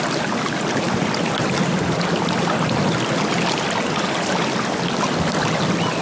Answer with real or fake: real